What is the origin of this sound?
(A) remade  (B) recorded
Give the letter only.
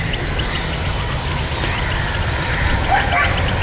A